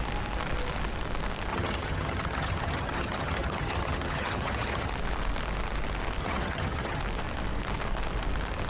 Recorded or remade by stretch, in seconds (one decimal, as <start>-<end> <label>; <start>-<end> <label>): 0.0-1.5 recorded; 1.5-4.9 remade; 4.9-6.2 recorded; 6.2-7.0 remade; 7.0-8.7 recorded